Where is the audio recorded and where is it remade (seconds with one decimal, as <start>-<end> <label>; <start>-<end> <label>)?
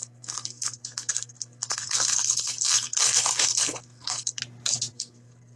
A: 0.0-4.4 remade; 4.4-4.9 recorded; 4.9-5.6 remade